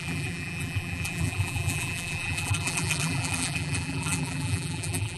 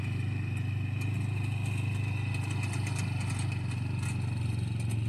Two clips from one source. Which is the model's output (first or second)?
first